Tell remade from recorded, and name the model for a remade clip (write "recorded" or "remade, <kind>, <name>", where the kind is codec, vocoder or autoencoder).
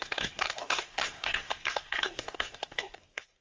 remade, codec, SNAC